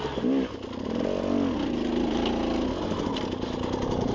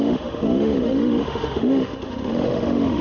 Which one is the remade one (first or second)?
second